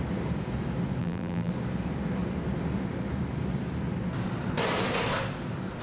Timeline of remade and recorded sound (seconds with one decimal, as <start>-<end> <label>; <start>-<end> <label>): 0.0-1.0 recorded; 1.0-1.5 remade; 1.5-5.8 recorded